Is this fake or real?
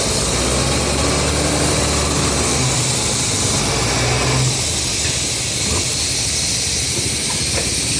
real